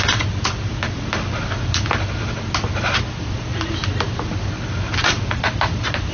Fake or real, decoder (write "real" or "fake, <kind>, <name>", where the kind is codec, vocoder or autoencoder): real